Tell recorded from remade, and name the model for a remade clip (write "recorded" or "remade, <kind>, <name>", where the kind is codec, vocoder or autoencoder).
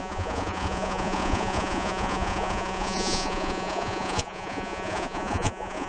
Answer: remade, vocoder, Vocos